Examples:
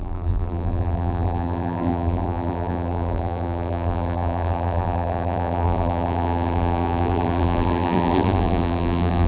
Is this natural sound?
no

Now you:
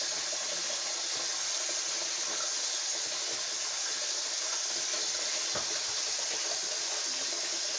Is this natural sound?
yes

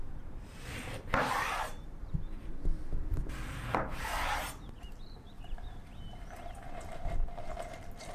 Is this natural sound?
no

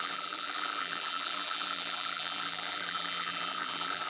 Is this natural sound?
no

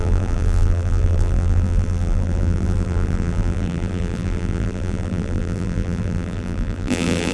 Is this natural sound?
no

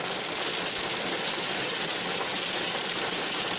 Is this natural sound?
yes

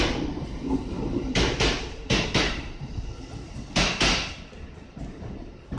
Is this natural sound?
yes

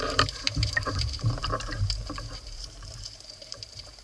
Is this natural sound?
no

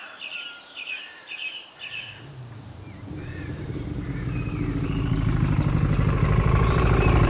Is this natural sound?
no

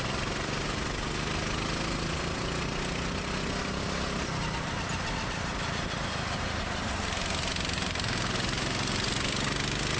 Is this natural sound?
yes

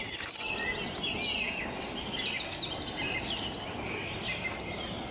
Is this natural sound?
yes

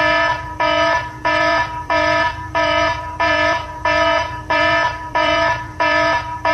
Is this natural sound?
no